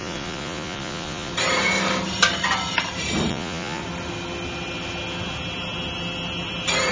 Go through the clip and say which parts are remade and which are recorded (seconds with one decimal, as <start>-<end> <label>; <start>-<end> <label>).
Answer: 0.0-1.3 remade; 1.3-3.3 recorded; 3.3-3.8 remade; 3.8-6.9 recorded